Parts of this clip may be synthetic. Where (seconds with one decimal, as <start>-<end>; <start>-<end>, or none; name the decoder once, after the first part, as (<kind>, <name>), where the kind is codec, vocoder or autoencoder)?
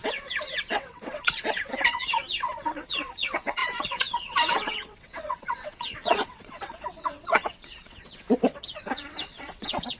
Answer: 0.0-10.0 (vocoder, WaveNeXt)